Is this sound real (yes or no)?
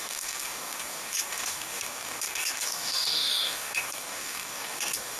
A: no